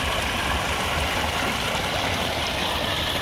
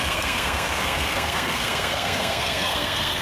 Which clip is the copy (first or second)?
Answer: second